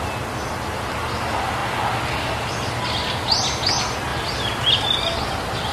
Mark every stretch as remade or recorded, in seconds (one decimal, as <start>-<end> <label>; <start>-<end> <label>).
0.0-5.7 recorded